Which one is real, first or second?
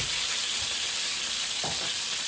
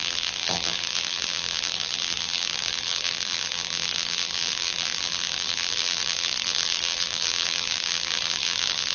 first